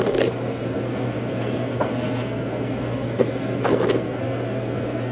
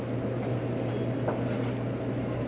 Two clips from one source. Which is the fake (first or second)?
first